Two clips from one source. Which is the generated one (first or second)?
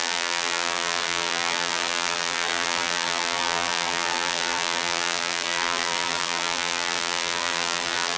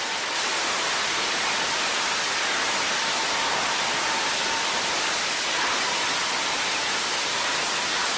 first